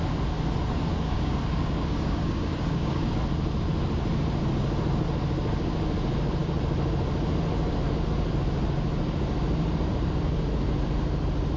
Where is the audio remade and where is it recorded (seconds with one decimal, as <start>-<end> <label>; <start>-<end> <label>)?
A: 0.0-0.9 recorded; 0.9-3.1 remade; 3.1-11.6 recorded